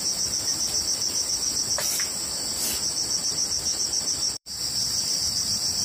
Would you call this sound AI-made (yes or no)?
yes